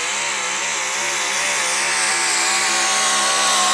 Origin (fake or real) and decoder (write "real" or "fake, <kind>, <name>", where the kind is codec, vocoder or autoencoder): real